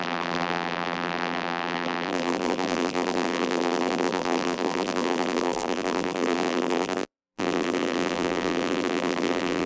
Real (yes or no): no